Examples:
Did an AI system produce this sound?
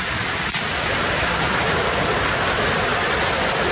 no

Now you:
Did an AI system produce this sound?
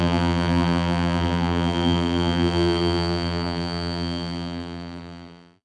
yes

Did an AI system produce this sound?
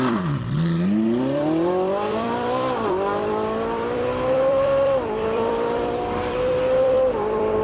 yes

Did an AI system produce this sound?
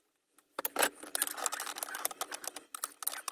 no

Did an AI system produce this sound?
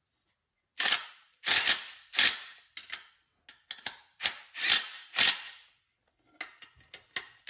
no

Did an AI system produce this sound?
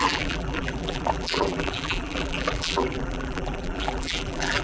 yes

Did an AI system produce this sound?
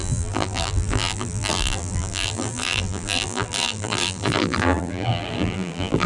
yes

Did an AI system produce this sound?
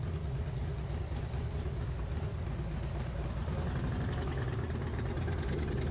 no